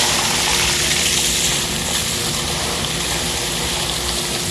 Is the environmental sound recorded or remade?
recorded